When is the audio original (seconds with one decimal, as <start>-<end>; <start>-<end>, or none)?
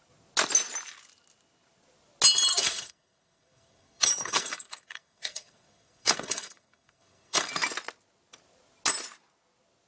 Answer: 0.0-2.5; 7.5-9.9